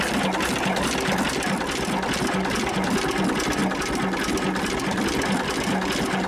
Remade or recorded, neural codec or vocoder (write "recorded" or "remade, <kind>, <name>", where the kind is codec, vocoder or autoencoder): recorded